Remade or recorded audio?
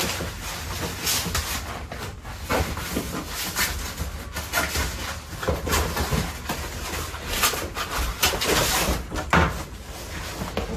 recorded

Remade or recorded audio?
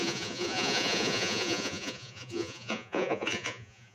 remade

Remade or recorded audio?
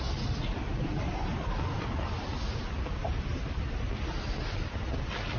recorded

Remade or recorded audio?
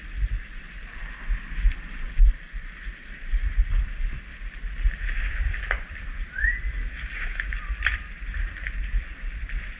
recorded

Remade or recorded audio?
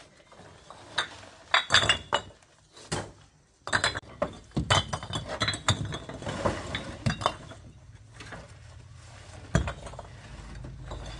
recorded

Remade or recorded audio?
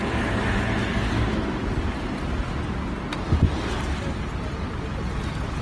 recorded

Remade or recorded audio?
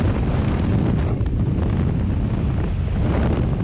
recorded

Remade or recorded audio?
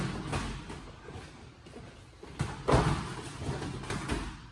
recorded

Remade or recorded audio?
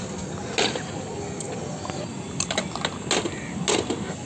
recorded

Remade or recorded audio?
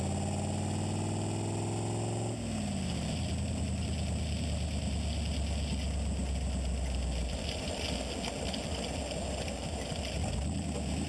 recorded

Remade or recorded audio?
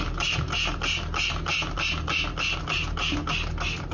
recorded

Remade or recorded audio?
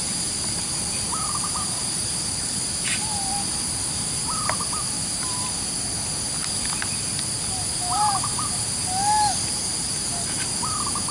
recorded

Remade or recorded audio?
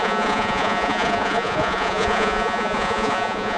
remade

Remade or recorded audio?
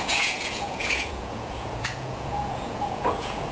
remade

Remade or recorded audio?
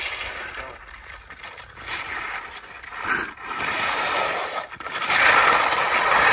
recorded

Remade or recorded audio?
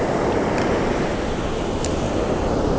recorded